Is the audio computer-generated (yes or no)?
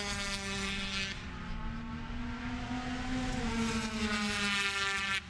no